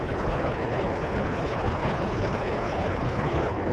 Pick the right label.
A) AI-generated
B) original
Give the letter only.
A